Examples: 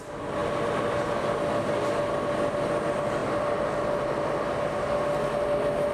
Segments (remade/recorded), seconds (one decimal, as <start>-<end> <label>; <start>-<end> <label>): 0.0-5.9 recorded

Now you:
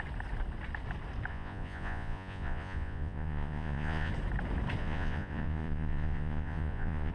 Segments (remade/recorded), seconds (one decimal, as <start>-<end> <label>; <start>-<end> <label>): 0.0-1.3 recorded; 1.3-4.1 remade; 4.1-4.8 recorded; 4.8-7.1 remade

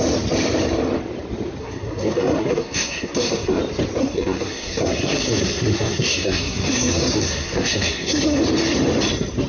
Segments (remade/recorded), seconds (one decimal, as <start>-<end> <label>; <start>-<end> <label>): 0.0-1.6 recorded; 1.6-3.6 remade; 3.6-4.0 recorded; 4.0-8.4 remade; 8.4-9.5 recorded

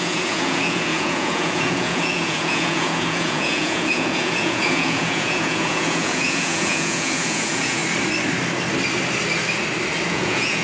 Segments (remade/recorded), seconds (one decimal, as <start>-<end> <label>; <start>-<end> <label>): 0.0-7.8 remade; 7.8-10.1 recorded; 10.1-10.6 remade

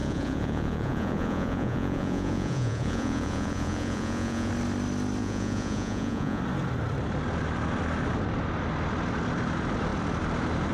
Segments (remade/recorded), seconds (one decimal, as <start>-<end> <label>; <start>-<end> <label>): 0.0-4.5 remade; 4.5-5.2 recorded; 5.2-6.4 remade; 6.4-10.7 recorded